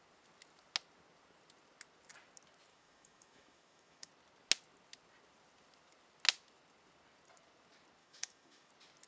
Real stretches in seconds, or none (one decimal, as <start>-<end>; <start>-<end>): 0.0-2.7; 4.1-8.0; 8.7-9.1